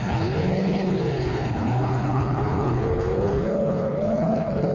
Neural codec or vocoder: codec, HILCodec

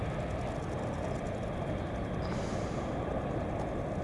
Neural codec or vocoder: none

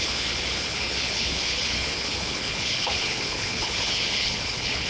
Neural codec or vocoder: codec, HILCodec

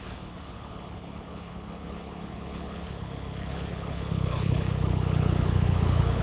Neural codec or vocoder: codec, HILCodec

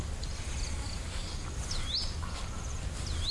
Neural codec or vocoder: none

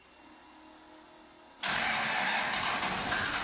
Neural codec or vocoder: none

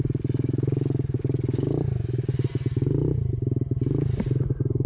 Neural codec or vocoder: none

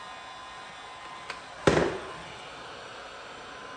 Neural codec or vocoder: none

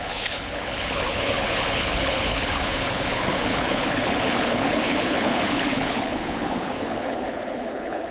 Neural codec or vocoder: codec, HILCodec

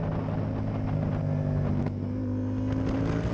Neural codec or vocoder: none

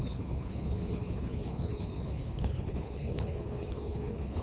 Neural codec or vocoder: codec, HILCodec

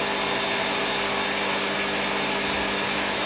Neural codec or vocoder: none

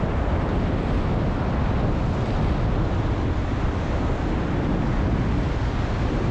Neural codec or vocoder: none